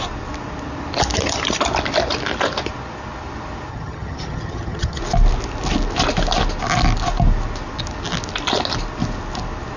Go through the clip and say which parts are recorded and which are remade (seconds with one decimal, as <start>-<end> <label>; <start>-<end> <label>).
0.0-3.7 recorded; 3.7-5.0 remade; 5.0-9.8 recorded